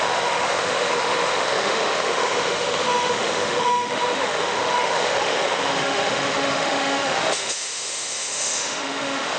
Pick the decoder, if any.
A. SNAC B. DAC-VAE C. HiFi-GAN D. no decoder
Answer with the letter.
B